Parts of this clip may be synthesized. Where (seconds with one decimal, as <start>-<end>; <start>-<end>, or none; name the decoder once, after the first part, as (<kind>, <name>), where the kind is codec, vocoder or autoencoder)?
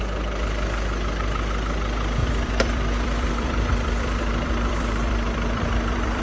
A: 2.2-6.2 (vocoder, BigVGAN v2)